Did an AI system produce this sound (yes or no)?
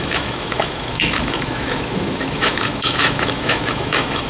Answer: yes